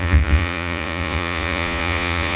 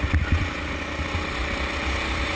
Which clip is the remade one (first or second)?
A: first